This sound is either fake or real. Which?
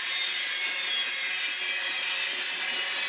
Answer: real